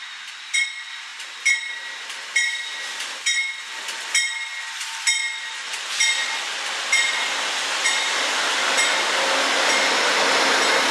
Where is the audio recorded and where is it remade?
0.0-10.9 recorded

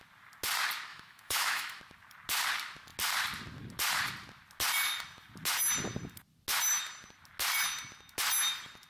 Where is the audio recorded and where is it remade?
0.0-0.9 recorded; 0.9-1.8 remade; 1.8-8.9 recorded

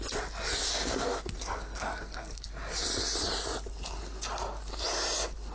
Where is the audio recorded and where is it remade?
0.0-0.7 recorded; 0.7-2.5 remade; 2.5-5.5 recorded